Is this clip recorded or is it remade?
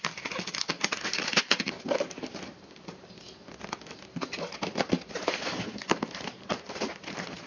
recorded